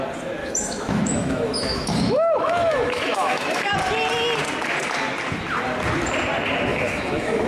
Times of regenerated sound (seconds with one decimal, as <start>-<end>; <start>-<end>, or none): 0.4-3.7; 6.7-7.5